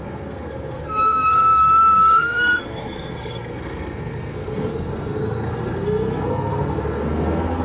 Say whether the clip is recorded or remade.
remade